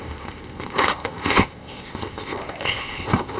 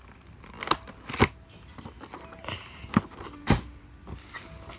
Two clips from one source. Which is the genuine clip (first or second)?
second